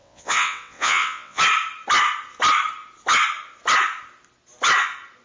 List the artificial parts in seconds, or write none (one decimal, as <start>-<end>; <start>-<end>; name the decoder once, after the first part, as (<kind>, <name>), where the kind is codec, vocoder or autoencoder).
0.0-1.4 (vocoder, WaveNeXt)